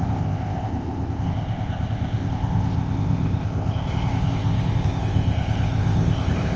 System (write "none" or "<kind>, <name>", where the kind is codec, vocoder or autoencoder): codec, ZipCodec